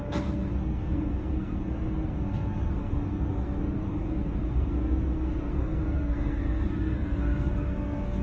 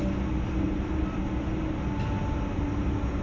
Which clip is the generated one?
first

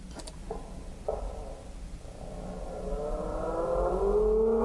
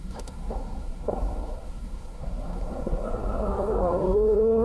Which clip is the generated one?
second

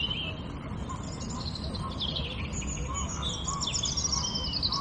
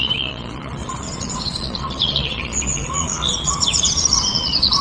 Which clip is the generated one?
second